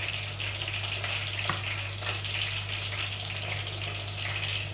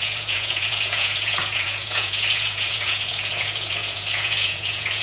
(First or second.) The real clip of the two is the first